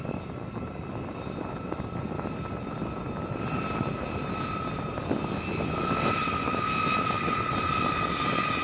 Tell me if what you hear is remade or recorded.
recorded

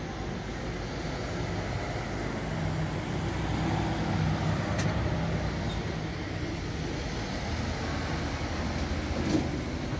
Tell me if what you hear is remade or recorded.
recorded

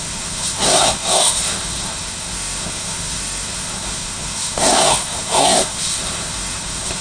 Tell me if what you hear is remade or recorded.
remade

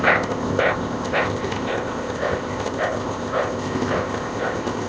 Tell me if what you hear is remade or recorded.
remade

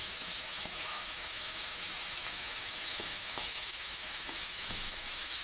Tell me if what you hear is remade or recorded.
remade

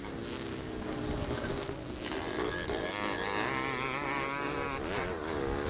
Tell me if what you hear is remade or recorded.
recorded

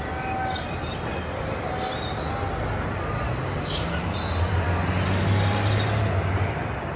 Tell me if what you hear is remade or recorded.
recorded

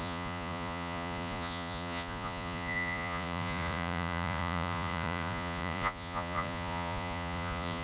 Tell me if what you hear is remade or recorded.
remade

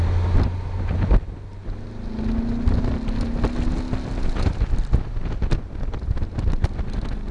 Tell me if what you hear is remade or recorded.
recorded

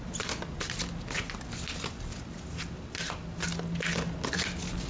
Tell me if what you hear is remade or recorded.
recorded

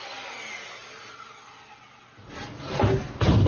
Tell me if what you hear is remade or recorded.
recorded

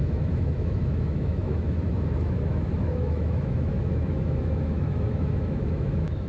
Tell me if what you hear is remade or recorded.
remade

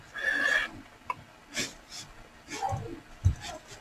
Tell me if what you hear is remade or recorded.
recorded